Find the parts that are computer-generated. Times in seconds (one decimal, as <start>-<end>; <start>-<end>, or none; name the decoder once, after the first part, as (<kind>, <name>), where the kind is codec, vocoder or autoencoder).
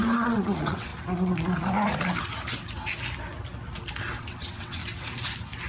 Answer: 0.0-0.9 (vocoder, WaveNeXt); 4.2-4.8